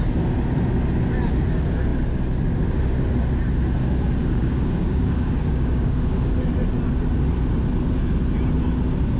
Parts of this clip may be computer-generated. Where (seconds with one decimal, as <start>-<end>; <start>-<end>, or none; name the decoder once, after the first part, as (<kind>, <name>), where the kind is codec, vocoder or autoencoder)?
4.2-6.3 (codec, DAC)